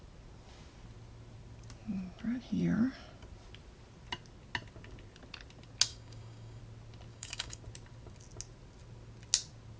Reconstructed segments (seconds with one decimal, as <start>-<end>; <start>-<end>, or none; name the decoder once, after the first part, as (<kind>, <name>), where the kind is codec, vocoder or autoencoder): 5.9-6.6 (codec, DAC); 7.1-7.6